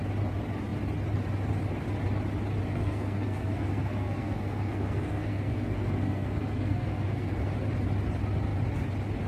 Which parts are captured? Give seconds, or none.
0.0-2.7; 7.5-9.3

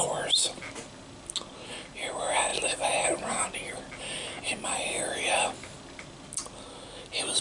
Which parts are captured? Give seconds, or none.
0.0-7.4